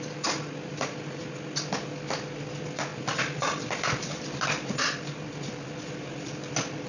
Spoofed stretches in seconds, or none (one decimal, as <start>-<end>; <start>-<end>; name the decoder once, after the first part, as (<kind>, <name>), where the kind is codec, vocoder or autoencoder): 2.9-6.9 (vocoder, BigVGAN v2)